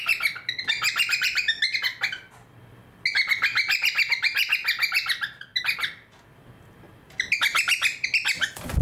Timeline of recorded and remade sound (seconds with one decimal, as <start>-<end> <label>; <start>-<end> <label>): 0.0-8.8 recorded